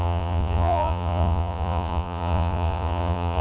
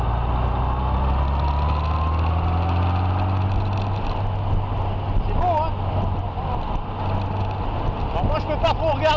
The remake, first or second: first